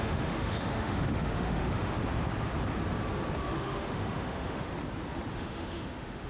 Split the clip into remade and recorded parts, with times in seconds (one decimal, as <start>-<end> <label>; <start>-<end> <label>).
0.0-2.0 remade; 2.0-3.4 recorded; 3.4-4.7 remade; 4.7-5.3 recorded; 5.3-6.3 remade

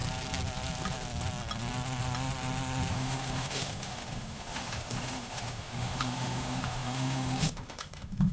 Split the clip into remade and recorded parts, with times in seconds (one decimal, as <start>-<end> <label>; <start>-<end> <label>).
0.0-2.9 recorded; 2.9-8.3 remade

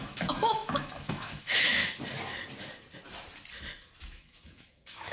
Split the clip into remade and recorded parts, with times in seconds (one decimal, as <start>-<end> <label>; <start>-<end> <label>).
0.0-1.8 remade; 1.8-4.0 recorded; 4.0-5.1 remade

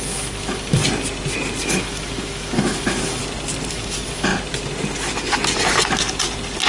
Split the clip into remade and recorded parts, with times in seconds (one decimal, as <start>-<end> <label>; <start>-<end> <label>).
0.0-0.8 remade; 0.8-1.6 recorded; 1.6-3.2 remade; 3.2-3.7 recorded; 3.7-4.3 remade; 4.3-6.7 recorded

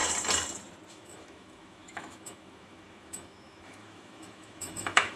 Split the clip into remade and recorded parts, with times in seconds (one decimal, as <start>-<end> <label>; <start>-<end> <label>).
0.0-0.9 recorded; 0.9-5.2 remade